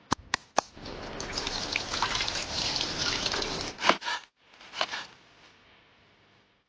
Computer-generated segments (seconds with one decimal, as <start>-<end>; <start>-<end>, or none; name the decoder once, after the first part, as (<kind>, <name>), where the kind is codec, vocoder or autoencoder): 2.4-3.2 (vocoder, BigVGAN v2)